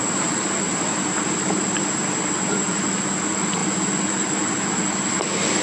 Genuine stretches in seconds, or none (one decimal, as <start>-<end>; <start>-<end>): 3.6-4.5